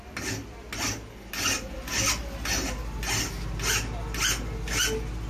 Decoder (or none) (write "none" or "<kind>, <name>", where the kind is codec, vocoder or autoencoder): none